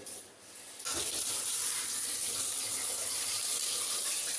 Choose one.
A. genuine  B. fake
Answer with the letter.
A